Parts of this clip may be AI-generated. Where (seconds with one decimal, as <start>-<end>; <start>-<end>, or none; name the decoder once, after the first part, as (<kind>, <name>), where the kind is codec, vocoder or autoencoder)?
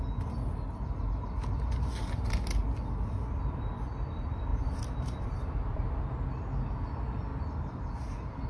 4.5-6.0 (vocoder, BigVGAN v2)